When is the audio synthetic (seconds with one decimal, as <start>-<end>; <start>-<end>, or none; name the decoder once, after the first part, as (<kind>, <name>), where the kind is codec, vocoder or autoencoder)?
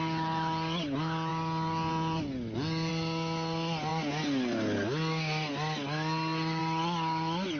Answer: none